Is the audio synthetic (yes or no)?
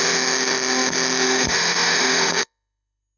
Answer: yes